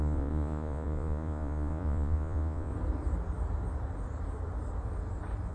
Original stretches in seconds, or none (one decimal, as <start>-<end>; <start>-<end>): 2.7-5.5